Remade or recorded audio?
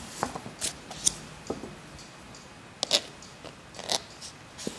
recorded